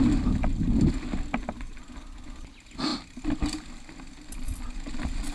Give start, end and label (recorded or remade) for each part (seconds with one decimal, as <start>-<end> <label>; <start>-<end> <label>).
0.0-5.3 recorded